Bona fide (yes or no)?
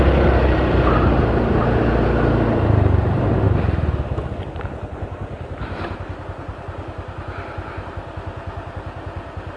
yes